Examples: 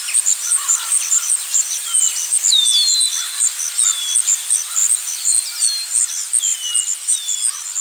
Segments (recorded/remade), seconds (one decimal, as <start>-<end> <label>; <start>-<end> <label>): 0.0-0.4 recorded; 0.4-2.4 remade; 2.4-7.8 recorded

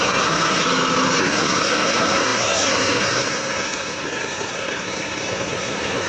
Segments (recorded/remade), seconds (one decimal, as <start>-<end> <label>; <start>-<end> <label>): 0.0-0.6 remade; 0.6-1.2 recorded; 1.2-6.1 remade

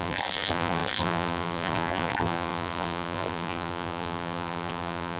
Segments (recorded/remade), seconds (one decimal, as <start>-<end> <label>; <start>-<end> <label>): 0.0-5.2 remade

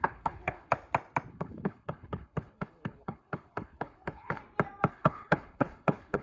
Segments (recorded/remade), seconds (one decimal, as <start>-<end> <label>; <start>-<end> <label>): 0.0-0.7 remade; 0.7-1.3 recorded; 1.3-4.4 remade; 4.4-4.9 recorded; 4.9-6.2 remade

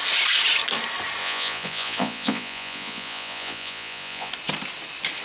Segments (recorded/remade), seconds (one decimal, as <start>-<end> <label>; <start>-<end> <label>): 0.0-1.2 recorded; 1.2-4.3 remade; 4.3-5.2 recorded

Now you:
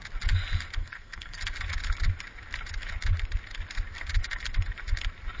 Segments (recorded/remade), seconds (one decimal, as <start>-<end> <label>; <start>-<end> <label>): 0.0-0.8 recorded; 0.8-1.4 remade; 1.4-5.4 recorded